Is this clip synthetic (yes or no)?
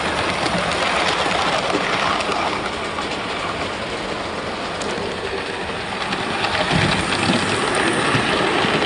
no